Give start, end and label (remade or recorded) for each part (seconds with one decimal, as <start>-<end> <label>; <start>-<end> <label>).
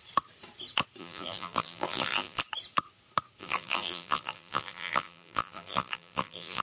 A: 0.0-1.0 recorded; 1.0-2.4 remade; 2.4-3.4 recorded; 3.4-6.6 remade